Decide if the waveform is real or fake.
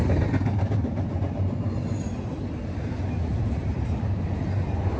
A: real